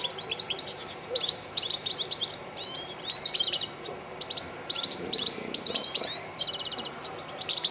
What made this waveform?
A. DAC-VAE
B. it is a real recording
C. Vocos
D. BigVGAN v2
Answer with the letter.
D